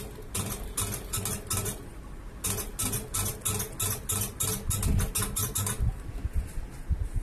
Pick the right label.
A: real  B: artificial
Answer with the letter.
A